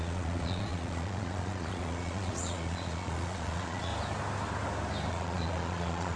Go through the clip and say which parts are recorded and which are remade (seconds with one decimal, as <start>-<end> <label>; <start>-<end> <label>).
0.0-3.9 remade; 3.9-5.1 recorded; 5.1-6.2 remade